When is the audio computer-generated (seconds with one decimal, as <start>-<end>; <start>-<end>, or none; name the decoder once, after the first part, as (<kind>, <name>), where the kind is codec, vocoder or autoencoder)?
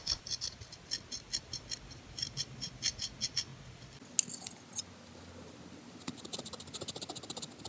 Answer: none